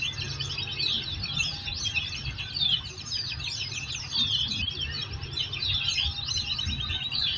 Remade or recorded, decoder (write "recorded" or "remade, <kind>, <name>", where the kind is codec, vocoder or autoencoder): recorded